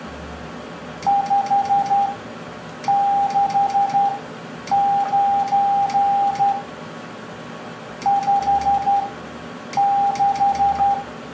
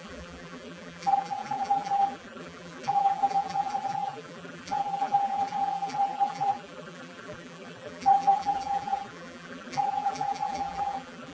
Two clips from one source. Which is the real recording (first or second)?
first